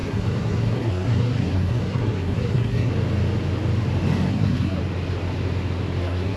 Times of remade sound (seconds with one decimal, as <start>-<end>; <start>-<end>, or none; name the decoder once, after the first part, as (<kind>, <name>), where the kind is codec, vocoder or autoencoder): 0.0-2.9 (codec, SNAC); 4.3-4.8; 6.0-6.4